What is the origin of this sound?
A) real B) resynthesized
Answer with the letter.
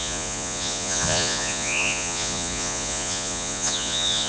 B